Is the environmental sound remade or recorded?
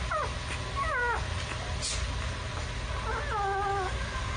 recorded